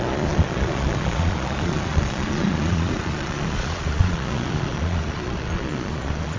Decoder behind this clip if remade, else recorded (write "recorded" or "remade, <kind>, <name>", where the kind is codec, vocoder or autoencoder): remade, vocoder, Vocos